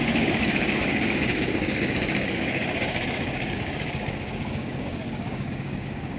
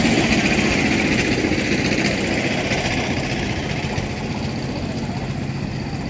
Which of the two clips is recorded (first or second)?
second